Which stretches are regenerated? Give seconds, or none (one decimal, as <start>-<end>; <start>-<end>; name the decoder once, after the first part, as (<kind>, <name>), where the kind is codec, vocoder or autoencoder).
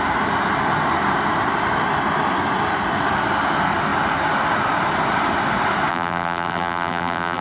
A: 5.9-7.4 (vocoder, BigVGAN v2)